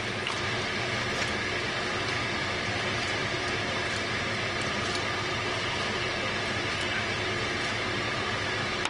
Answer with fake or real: real